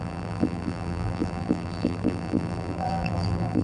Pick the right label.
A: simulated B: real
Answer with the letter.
A